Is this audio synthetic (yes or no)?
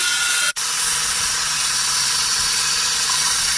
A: yes